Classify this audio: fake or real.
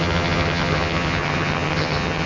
fake